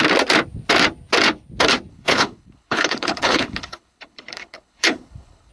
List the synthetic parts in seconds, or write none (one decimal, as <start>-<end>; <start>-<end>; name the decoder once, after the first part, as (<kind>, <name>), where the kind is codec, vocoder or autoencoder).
1.9-5.5 (codec, HILCodec)